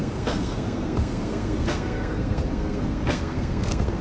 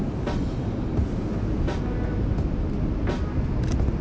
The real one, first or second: second